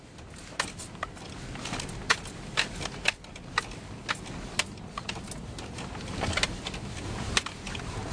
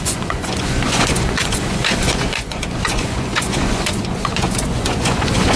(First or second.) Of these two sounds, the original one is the first